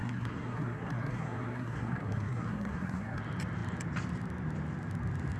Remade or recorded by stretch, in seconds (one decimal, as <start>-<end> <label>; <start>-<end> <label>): 0.0-3.2 remade; 3.2-5.4 recorded